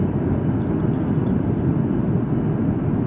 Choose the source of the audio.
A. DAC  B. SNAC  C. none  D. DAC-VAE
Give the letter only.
C